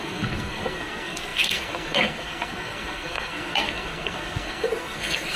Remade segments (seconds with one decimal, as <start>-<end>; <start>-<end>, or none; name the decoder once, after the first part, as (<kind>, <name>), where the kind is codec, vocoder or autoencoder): 0.0-5.4 (codec, SNAC)